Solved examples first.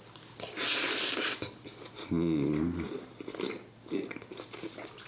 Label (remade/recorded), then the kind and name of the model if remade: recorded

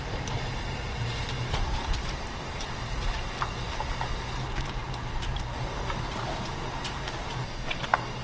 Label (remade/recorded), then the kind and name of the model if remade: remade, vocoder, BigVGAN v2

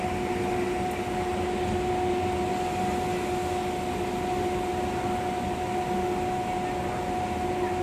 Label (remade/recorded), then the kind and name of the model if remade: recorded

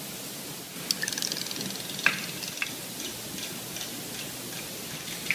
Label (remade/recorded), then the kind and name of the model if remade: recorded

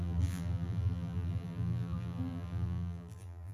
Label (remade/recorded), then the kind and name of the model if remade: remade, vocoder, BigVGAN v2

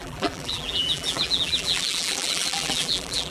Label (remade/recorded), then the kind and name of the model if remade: remade, vocoder, BigVGAN v2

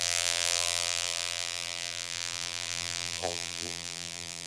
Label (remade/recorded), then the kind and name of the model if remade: remade, vocoder, BigVGAN v2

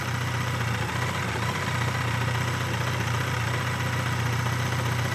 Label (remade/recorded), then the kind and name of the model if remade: recorded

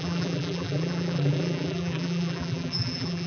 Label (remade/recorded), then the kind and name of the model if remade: remade, vocoder, BigVGAN v2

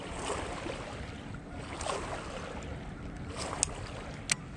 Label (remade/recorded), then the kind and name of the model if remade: recorded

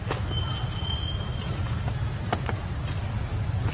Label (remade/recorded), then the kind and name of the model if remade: recorded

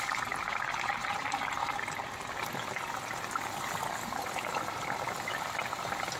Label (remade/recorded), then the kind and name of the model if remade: recorded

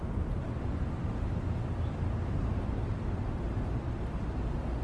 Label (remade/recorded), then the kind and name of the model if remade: remade, vocoder, BigVGAN v2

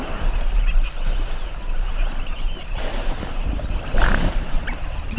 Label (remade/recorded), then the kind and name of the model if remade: remade, vocoder, BigVGAN v2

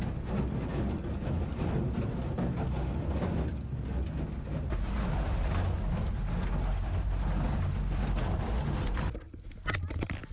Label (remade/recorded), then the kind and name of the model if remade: recorded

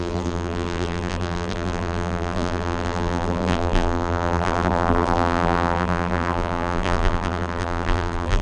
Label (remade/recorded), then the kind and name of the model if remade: remade, vocoder, BigVGAN v2